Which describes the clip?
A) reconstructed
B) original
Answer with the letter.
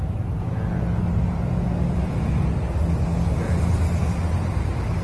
B